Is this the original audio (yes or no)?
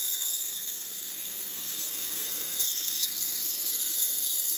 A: no